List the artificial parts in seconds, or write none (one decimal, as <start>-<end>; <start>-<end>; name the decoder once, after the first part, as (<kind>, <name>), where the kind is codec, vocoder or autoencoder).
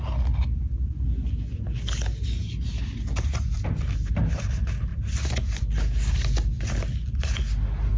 none